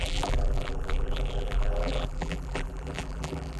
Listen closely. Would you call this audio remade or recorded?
remade